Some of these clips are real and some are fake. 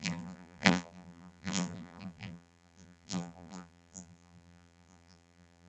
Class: fake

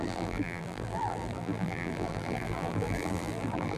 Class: fake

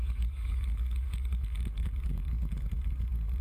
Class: fake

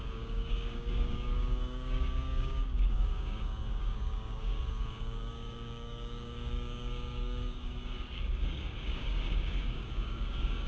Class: fake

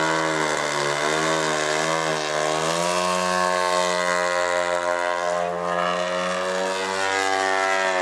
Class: real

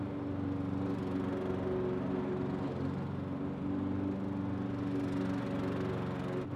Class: real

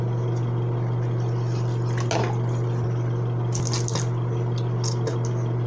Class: real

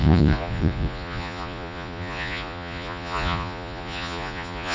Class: fake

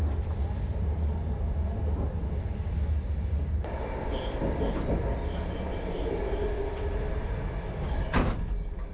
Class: real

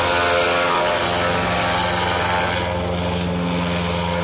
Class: real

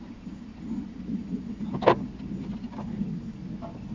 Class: real